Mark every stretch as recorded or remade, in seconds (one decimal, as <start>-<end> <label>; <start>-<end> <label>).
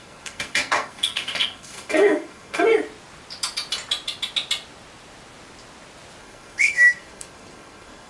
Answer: 0.0-2.7 remade; 2.7-6.2 recorded; 6.2-8.1 remade